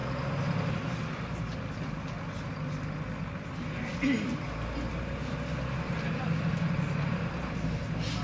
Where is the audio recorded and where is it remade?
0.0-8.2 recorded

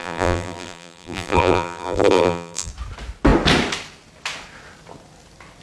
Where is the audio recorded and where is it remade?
0.0-2.7 remade; 2.7-5.6 recorded